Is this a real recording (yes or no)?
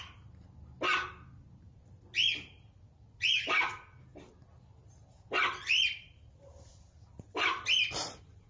yes